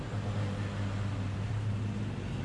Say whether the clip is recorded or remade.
recorded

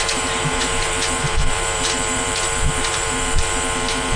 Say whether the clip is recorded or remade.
remade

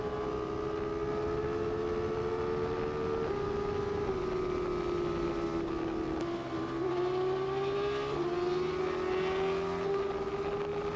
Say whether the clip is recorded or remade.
recorded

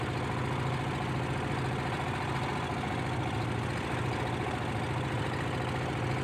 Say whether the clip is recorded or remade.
recorded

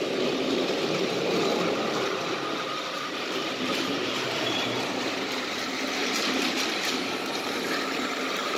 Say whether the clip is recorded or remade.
remade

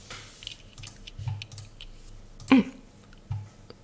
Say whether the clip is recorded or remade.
recorded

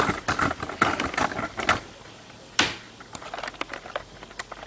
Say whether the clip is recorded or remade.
recorded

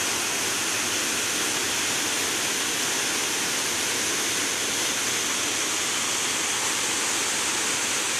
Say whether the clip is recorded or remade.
recorded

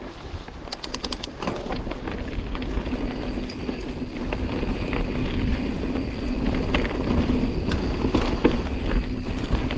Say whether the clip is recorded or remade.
recorded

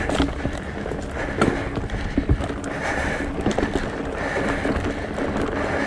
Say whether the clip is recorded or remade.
recorded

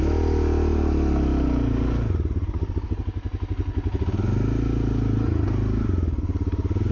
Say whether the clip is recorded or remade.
recorded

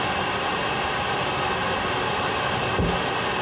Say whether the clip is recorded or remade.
recorded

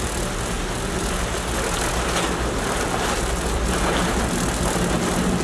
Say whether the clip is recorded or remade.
recorded